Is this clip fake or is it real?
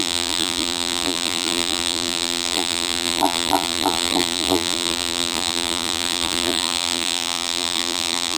fake